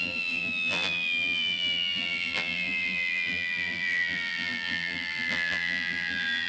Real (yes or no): no